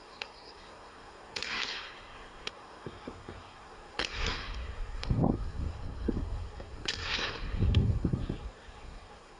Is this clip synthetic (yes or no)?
yes